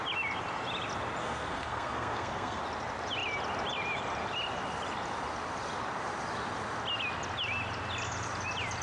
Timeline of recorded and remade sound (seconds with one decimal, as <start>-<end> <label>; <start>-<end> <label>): 0.0-1.2 recorded; 1.2-2.6 remade; 2.6-8.8 recorded